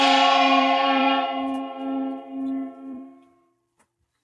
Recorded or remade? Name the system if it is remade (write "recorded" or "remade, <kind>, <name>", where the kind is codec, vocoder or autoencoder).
remade, vocoder, BigVGAN v2